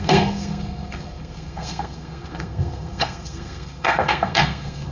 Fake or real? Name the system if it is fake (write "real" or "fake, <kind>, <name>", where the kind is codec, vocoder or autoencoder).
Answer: fake, codec, SNAC